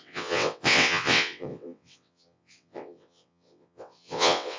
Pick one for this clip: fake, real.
fake